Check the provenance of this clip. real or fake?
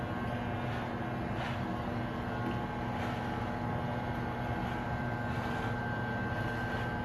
real